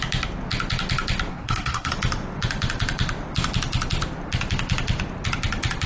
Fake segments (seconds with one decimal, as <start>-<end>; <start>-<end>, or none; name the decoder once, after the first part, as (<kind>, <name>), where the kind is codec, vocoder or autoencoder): 1.3-1.9 (codec, SNAC)